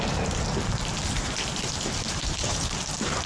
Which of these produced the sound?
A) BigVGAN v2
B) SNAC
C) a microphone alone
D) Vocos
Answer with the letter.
A